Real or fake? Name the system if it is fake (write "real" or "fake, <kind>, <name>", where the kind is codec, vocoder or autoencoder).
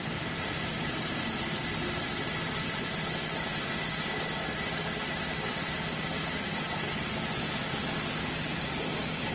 real